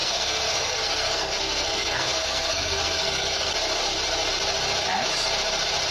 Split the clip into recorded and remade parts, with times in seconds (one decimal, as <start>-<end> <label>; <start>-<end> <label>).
0.0-3.5 remade; 3.5-5.9 recorded